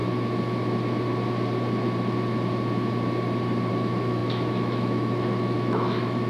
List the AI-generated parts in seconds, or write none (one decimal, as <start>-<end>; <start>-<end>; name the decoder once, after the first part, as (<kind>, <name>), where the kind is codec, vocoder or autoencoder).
3.7-6.3 (autoencoder, DAC-VAE)